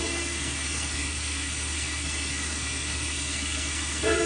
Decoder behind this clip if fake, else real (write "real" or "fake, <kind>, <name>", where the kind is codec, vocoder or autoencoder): fake, codec, SNAC